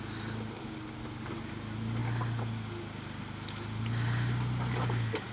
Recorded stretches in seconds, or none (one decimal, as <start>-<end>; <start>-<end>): 0.0-5.3